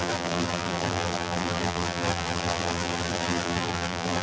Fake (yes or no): yes